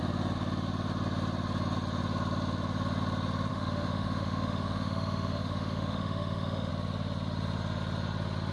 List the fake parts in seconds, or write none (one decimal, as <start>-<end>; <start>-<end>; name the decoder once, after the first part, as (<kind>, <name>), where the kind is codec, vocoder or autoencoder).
3.5-6.7 (autoencoder, DAC-VAE)